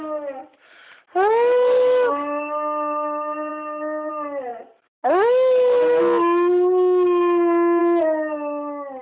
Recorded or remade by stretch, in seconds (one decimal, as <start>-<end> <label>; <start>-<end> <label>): 0.0-9.0 recorded